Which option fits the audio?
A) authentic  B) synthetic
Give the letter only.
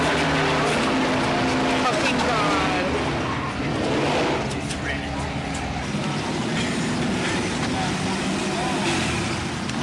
A